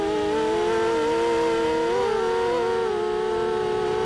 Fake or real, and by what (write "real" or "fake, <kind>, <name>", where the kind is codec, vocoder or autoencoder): real